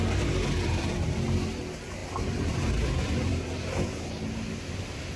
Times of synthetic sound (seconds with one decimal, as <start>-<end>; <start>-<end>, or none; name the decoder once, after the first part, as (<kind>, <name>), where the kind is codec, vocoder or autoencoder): 2.0-4.1 (vocoder, BigVGAN v2)